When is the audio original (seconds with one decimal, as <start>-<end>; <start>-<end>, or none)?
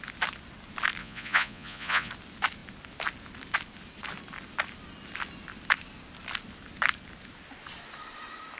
0.0-1.0; 2.1-8.6